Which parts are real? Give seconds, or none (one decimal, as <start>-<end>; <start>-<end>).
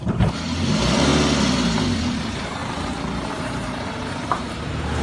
1.1-2.0; 2.6-3.3